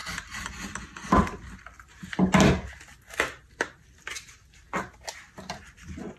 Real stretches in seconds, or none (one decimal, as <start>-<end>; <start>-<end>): 0.0-6.2